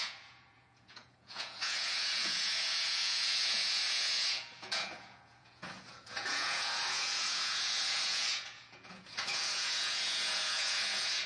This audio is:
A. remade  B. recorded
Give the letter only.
A